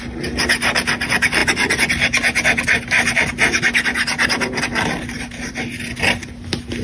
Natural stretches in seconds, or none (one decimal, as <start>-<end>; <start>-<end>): 0.0-6.8